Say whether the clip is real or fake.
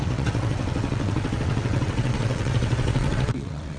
fake